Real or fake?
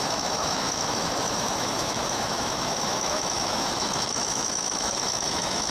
fake